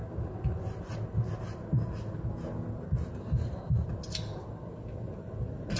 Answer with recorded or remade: recorded